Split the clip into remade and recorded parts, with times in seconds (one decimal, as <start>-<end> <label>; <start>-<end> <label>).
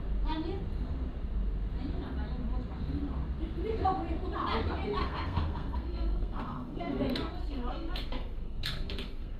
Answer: 0.0-5.0 recorded; 5.0-7.0 remade; 7.0-7.4 recorded; 7.4-9.4 remade